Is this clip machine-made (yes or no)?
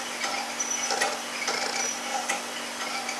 no